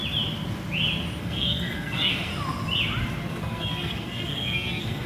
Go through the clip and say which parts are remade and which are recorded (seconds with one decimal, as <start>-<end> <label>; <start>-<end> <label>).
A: 0.0-1.2 recorded; 1.2-2.3 remade; 2.3-3.3 recorded; 3.3-5.1 remade